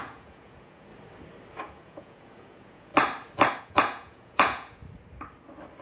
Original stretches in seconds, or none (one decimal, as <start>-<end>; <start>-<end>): 0.9-1.6; 2.9-3.6; 4.8-5.8